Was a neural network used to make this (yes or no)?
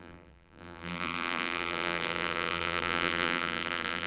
yes